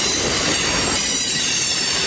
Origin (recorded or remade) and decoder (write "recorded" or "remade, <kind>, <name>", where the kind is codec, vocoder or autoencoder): remade, vocoder, BigVGAN v2